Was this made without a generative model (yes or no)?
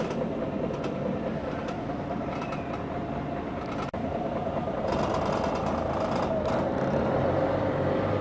yes